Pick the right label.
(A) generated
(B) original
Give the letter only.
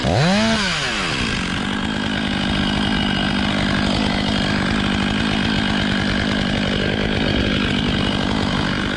B